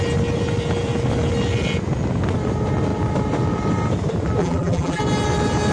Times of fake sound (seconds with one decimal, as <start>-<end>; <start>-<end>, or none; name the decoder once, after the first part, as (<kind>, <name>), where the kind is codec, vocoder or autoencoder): 4.4-5.0 (vocoder, BigVGAN v2)